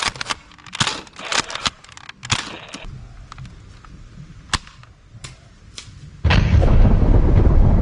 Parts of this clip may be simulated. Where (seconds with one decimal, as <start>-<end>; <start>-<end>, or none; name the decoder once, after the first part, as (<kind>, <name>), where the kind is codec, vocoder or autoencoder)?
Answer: none